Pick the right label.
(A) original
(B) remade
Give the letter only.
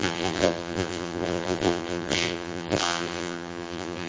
B